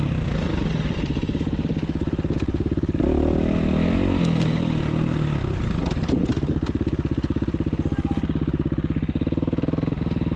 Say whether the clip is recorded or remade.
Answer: recorded